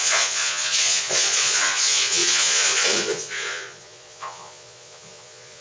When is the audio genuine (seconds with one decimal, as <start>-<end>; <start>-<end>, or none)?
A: none